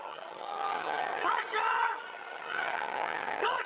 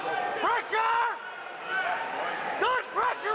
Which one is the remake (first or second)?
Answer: first